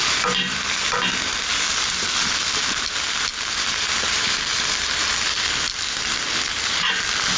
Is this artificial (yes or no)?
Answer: no